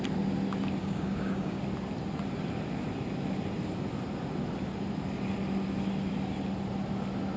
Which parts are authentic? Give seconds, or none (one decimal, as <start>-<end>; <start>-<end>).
0.0-0.8; 1.6-7.4